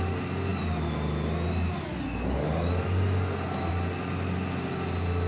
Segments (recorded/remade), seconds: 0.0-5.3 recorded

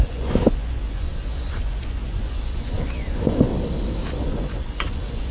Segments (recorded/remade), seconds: 0.0-3.5 remade; 3.5-4.2 recorded; 4.2-5.3 remade

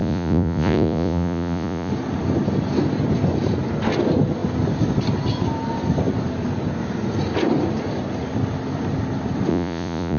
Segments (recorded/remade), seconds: 0.0-1.9 remade; 1.9-9.5 recorded; 9.5-10.2 remade

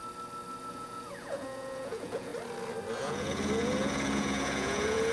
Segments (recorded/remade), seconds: 0.0-0.7 recorded; 0.7-2.3 remade; 2.3-3.0 recorded; 3.0-5.1 remade

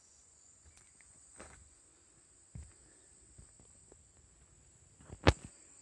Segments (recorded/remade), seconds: 0.0-1.9 remade; 1.9-5.8 recorded

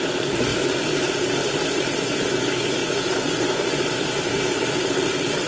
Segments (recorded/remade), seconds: 0.0-2.8 recorded; 2.8-3.8 remade; 3.8-5.5 recorded

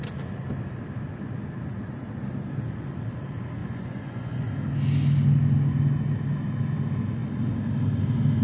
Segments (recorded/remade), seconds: 0.0-3.6 recorded; 3.6-4.5 remade; 4.5-8.4 recorded

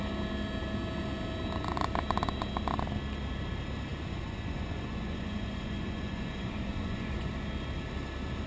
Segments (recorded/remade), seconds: 0.0-3.9 recorded; 3.9-7.3 remade; 7.3-8.5 recorded